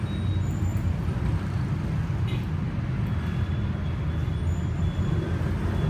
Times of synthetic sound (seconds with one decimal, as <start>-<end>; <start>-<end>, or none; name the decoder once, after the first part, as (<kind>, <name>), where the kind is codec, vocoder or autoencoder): 0.7-2.4 (vocoder, BigVGAN v2); 4.2-5.4